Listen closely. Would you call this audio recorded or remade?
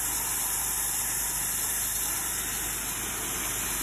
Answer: recorded